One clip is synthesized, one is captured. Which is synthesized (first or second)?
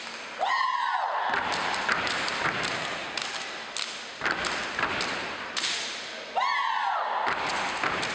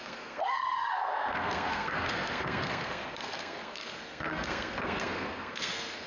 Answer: second